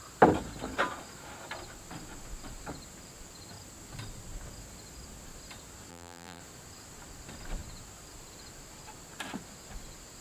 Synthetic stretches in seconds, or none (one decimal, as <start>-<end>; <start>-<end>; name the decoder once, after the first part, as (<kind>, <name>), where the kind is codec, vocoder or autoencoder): 5.9-6.4 (vocoder, BigVGAN v2)